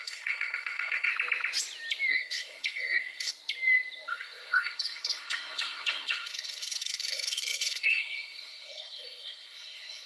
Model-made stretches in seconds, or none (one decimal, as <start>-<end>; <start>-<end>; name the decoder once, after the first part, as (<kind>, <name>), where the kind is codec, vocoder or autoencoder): 0.0-1.1 (codec, SNAC); 2.1-3.3; 4.1-10.1